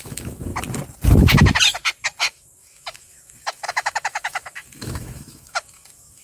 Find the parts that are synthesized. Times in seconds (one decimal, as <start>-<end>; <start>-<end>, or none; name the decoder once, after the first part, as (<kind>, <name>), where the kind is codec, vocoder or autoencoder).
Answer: 0.0-0.5 (autoencoder, DAC-VAE); 2.2-6.2